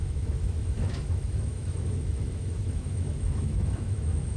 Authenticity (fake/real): fake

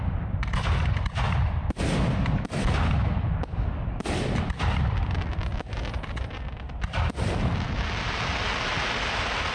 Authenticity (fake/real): real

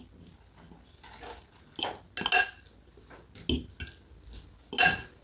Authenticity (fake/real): real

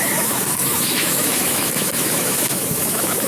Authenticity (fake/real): fake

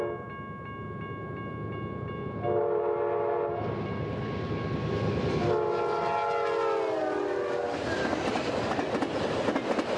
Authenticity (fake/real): real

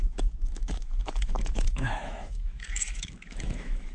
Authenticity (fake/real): fake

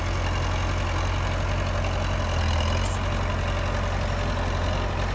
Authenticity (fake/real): real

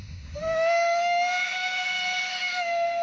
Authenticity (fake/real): fake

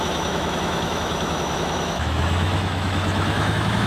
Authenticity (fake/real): fake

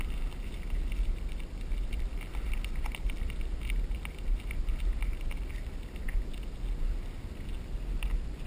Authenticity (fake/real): real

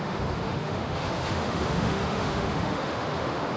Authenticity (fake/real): fake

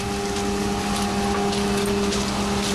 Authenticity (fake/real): real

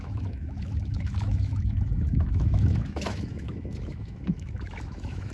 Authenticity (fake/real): fake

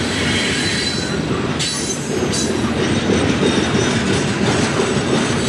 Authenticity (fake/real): real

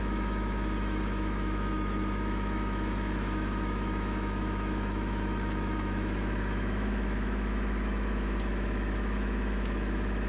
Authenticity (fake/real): fake